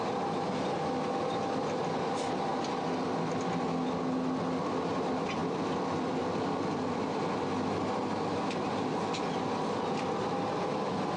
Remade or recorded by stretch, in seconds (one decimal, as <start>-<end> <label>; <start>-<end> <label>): 0.0-11.2 recorded